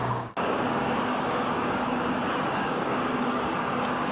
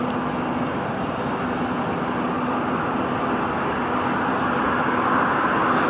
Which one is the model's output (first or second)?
first